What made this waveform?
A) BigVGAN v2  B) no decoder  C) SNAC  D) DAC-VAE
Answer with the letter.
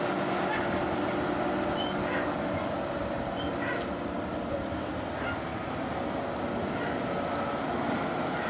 B